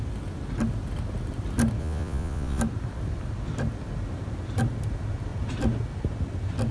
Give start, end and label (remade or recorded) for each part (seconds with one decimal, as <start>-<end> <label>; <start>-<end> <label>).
0.0-1.8 recorded; 1.8-2.6 remade; 2.6-6.7 recorded